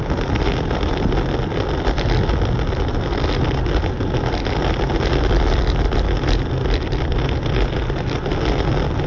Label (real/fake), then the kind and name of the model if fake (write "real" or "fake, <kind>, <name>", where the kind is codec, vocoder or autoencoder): real